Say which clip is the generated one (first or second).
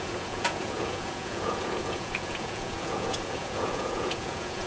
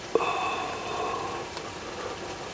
first